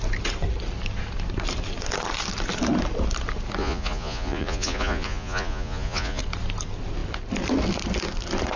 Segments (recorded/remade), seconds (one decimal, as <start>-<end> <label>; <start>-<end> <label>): 0.0-3.6 recorded; 3.6-6.2 remade; 6.2-8.6 recorded